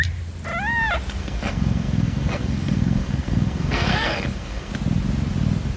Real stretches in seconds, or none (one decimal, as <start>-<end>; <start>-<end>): 0.0-1.2; 4.7-5.8